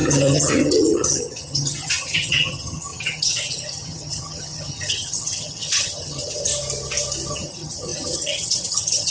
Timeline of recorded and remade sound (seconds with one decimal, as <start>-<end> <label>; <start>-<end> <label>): 0.0-6.5 remade; 6.5-7.3 recorded; 7.3-9.1 remade